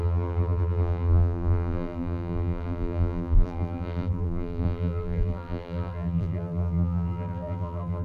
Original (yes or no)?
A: no